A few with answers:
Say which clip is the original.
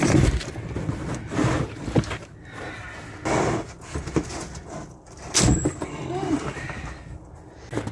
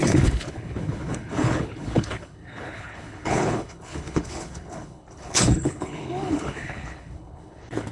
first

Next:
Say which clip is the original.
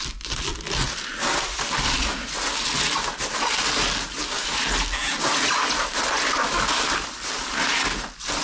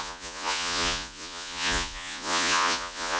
first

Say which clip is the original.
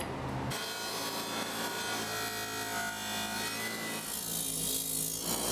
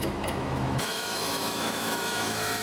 first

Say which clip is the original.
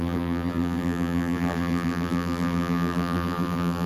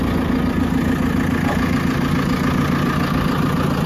second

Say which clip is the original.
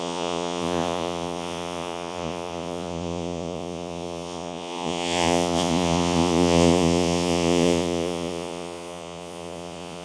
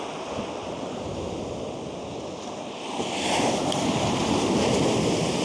second